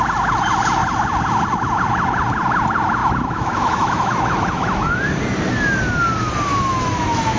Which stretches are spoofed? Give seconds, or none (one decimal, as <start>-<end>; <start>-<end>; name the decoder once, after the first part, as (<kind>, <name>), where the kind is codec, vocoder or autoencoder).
3.0-5.0 (autoencoder, DAC-VAE); 6.5-7.4